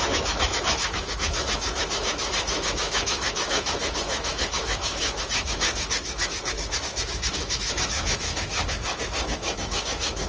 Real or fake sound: fake